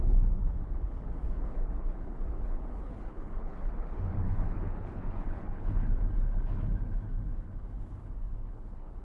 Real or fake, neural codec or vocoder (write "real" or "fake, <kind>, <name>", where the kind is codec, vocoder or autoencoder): fake, codec, HILCodec